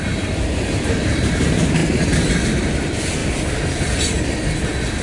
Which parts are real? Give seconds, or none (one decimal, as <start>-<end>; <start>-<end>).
0.0-5.0